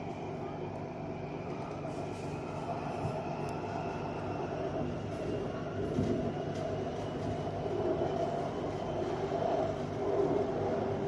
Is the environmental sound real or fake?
real